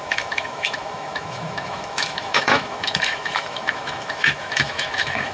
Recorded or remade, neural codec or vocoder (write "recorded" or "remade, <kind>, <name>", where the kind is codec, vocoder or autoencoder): remade, autoencoder, DAC-VAE